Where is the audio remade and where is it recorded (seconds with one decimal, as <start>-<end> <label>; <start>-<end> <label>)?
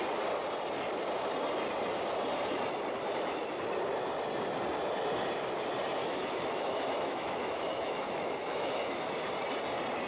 0.0-6.0 recorded; 6.0-9.1 remade; 9.1-10.1 recorded